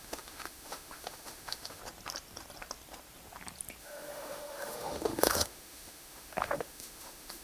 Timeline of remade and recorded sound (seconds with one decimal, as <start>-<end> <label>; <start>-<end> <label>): 0.0-1.8 remade; 1.8-3.8 recorded; 3.8-7.4 remade